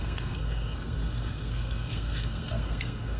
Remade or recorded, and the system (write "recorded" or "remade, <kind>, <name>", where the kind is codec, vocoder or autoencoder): remade, codec, SNAC